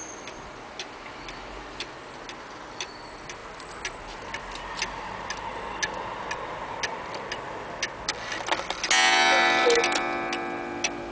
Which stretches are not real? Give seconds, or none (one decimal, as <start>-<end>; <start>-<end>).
none